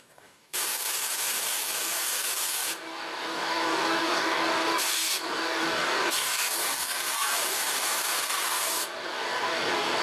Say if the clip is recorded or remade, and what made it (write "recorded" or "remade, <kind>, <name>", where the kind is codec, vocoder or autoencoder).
remade, codec, DAC